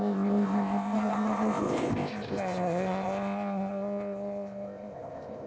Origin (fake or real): fake